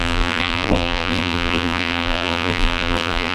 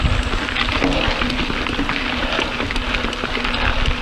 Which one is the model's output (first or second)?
first